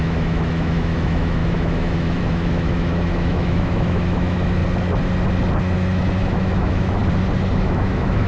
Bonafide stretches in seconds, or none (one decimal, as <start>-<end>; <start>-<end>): 4.6-6.2; 7.0-7.5